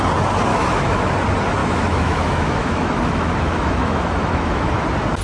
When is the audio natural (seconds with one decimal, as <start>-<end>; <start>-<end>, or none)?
0.0-0.5; 1.1-1.6; 4.7-5.2